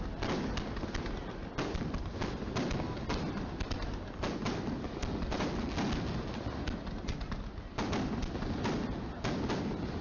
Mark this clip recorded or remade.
recorded